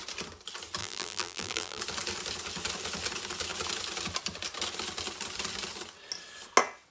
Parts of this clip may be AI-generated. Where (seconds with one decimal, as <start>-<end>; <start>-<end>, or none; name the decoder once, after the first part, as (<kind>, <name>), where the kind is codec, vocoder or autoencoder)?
0.8-1.8 (vocoder, BigVGAN v2)

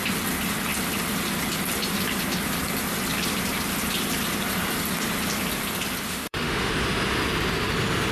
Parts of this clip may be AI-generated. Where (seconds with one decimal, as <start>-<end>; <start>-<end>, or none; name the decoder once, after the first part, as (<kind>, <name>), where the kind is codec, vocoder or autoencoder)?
6.1-6.7 (autoencoder, DAC-VAE)